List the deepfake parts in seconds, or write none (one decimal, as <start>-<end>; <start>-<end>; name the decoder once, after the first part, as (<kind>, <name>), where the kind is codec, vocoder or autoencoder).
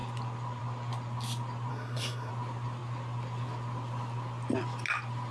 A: 1.7-2.3 (codec, SNAC)